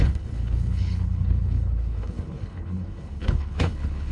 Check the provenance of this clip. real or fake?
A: fake